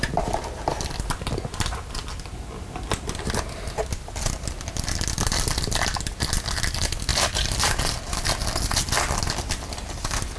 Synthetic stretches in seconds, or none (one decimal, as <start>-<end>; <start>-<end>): none